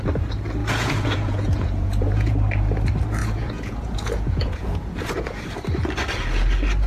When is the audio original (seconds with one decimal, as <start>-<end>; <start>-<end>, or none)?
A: 0.0-0.6; 2.3-3.2; 5.4-6.9